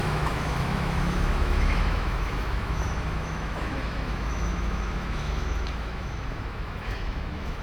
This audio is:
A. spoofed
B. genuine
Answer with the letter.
A